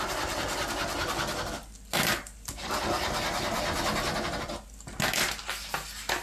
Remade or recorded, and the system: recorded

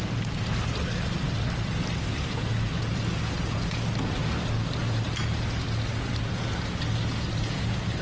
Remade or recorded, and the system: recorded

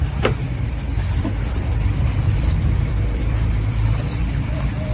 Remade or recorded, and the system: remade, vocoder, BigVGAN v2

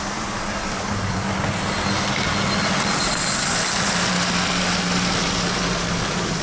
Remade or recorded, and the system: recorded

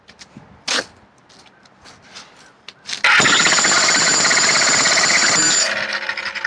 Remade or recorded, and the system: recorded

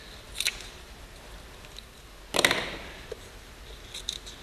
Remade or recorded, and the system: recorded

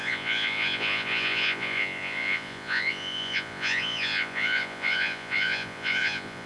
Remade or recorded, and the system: remade, vocoder, Vocos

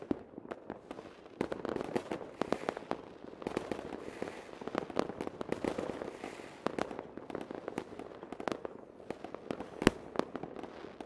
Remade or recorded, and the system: recorded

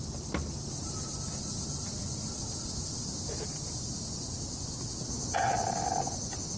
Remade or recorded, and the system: remade, vocoder, BigVGAN v2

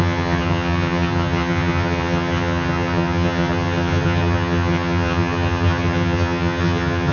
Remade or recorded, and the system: remade, vocoder, HiFi-GAN